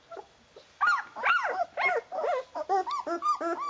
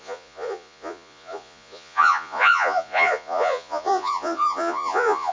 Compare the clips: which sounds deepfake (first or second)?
second